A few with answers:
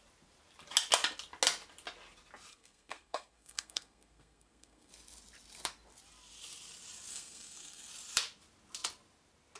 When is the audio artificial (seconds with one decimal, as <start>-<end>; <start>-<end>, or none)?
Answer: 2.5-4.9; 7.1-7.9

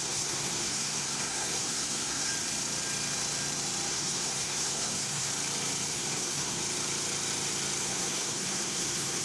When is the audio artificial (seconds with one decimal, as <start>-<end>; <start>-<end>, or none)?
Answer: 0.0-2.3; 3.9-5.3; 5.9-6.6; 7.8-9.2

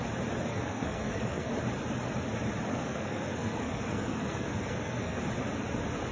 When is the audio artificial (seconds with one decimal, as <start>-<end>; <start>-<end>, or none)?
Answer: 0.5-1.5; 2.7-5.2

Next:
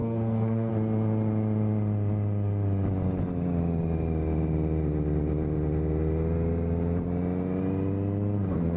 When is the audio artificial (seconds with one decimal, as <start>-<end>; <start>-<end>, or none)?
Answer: 0.0-0.7

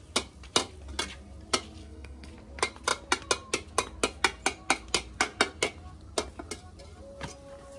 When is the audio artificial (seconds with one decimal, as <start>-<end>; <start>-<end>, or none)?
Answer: 1.8-2.3

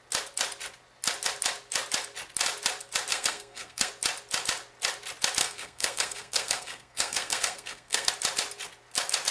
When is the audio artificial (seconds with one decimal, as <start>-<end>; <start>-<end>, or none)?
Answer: 3.1-3.9; 5.4-8.1

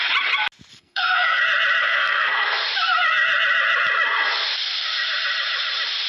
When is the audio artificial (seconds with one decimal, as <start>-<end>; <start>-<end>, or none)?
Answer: 0.7-1.4; 1.8-2.6